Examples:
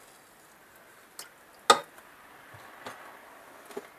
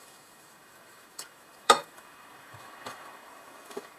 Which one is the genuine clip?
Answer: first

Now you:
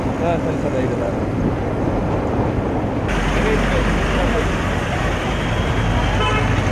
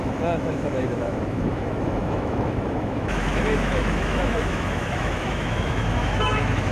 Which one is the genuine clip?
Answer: first